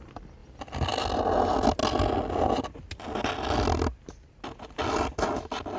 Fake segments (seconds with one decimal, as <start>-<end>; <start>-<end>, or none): none